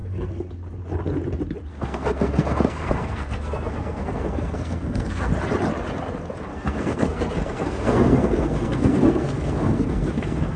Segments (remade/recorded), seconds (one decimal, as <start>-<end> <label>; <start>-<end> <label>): 0.0-0.5 remade; 0.5-1.7 recorded; 1.7-5.3 remade; 5.3-6.5 recorded; 6.5-10.6 remade